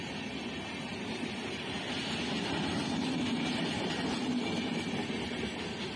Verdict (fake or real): real